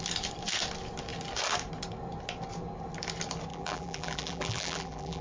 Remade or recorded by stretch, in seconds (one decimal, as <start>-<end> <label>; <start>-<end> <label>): 0.0-3.5 recorded; 3.5-5.2 remade